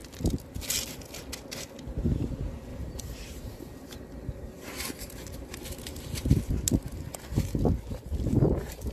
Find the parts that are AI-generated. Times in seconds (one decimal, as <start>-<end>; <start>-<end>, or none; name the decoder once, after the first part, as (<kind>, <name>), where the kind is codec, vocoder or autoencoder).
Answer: 2.7-6.5 (vocoder, BigVGAN v2)